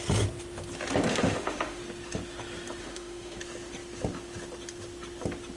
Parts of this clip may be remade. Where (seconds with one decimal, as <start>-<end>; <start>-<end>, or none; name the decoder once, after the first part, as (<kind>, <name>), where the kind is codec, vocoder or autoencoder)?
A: 1.1-1.8 (autoencoder, DAC-VAE); 2.8-3.4